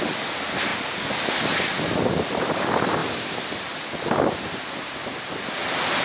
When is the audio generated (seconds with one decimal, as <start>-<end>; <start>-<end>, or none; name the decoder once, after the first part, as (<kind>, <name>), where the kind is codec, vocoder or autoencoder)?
0.7-2.4 (vocoder, BigVGAN v2); 3.0-4.4